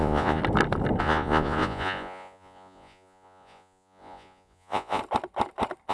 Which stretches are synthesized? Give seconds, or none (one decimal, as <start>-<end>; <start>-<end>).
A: 0.0-0.4; 1.0-5.0